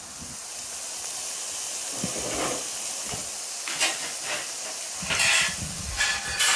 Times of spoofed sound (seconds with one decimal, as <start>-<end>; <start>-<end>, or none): none